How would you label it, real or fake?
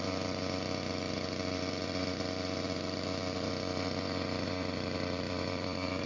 fake